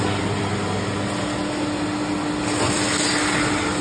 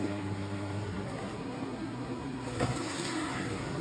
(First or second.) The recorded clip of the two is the first